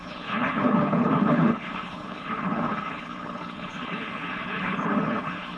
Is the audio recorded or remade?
remade